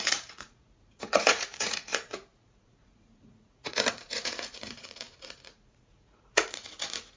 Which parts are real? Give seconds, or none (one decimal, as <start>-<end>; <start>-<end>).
none